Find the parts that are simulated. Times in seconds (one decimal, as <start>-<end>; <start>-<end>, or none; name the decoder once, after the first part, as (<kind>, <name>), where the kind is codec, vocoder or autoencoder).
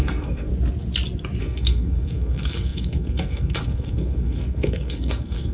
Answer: 0.0-0.5 (codec, SNAC); 1.4-5.5